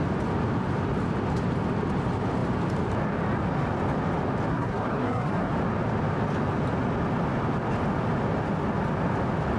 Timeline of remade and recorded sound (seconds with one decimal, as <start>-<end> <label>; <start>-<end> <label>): 0.0-4.5 recorded; 4.5-5.5 remade; 5.5-9.6 recorded